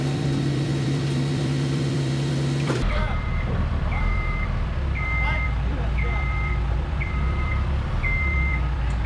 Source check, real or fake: fake